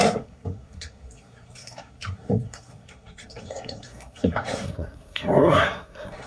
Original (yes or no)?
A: no